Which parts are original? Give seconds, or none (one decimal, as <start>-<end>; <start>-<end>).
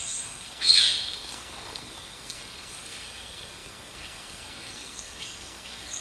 none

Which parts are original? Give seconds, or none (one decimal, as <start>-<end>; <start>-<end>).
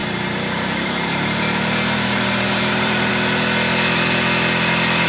3.1-5.1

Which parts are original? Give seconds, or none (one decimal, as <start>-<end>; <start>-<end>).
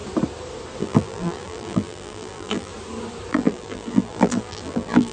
0.0-0.8; 2.7-3.3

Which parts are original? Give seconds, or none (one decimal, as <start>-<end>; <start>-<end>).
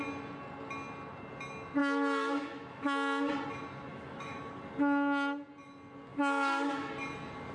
0.0-1.8; 3.3-3.9; 4.5-6.1; 6.9-7.5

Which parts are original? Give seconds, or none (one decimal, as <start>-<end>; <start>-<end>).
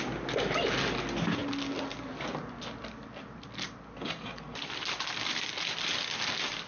0.0-6.7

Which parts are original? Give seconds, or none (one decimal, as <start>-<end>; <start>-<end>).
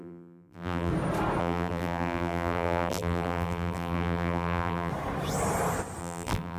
0.9-1.4; 4.9-6.0